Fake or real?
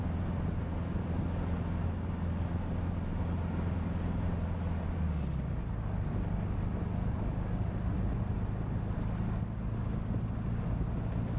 real